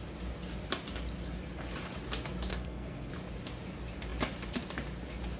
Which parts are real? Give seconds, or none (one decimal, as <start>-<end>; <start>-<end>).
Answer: 0.0-2.5; 3.1-5.4